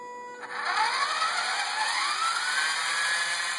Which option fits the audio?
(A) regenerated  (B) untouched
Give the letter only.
B